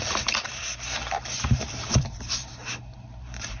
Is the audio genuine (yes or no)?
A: no